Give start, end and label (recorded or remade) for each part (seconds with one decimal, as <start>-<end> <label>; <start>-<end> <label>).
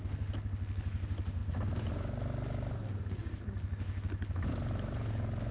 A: 0.0-5.5 recorded